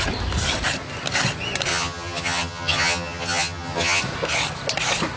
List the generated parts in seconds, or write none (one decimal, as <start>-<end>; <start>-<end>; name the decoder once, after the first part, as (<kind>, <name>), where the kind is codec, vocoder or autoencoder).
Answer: 1.7-4.0 (vocoder, HiFi-GAN)